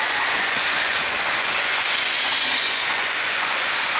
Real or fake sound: fake